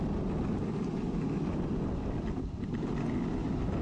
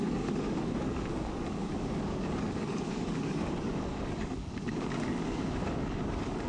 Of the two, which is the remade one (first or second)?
second